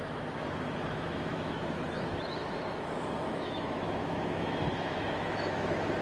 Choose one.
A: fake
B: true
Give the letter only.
A